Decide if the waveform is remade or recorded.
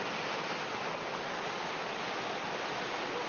recorded